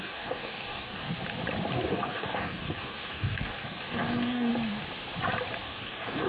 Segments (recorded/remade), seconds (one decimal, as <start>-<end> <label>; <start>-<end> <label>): 0.0-1.1 remade; 1.1-1.9 recorded; 1.9-4.5 remade; 4.5-5.6 recorded; 5.6-6.3 remade